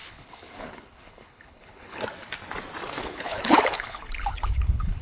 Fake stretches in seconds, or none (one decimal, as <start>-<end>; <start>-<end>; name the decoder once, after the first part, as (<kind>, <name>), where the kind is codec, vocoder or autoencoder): 0.0-2.0 (codec, HILCodec); 3.0-5.0